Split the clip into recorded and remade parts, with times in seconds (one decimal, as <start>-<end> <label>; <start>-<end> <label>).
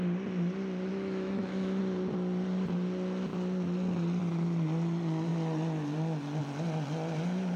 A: 0.0-0.9 recorded; 0.9-1.8 remade; 1.8-7.6 recorded